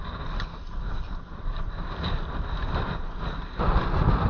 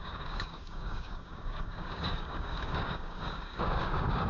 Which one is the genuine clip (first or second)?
first